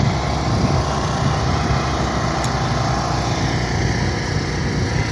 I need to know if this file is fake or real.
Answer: real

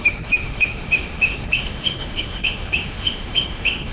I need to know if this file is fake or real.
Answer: fake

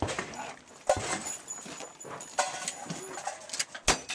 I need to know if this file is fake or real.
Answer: real